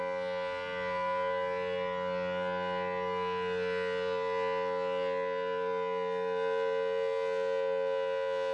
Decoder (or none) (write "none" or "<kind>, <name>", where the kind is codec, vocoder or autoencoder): none